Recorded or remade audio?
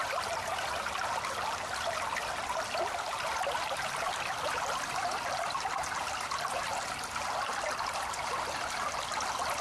recorded